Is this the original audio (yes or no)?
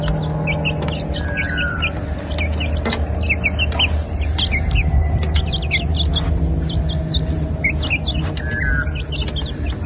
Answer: yes